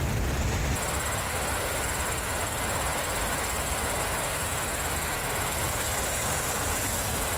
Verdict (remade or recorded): recorded